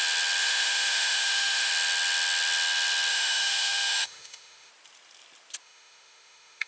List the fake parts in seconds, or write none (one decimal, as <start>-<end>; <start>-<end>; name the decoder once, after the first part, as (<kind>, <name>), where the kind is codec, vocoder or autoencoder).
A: 0.4-1.7 (autoencoder, DAC-VAE); 3.1-4.7; 5.6-6.7